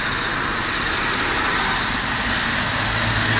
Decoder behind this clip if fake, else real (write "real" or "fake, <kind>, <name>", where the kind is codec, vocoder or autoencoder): real